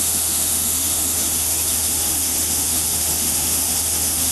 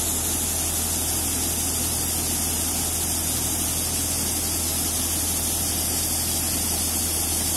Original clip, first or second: second